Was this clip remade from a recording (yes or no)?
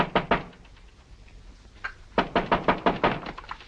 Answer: no